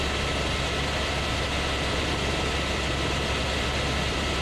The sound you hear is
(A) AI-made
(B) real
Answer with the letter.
B